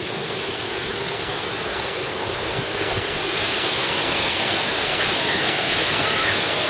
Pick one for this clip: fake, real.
fake